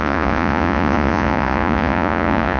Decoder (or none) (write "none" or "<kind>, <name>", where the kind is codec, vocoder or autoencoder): vocoder, Vocos